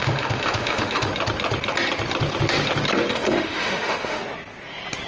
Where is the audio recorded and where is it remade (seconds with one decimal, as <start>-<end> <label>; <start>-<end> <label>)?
0.0-1.1 remade; 1.1-3.1 recorded; 3.1-4.2 remade; 4.2-5.1 recorded